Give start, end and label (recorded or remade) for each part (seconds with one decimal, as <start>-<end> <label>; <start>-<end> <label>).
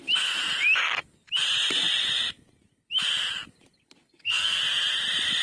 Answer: 0.0-4.0 recorded; 4.0-4.6 remade; 4.6-5.4 recorded